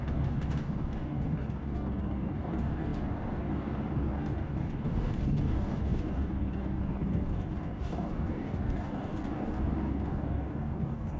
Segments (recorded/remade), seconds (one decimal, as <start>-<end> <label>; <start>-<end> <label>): 0.0-11.2 remade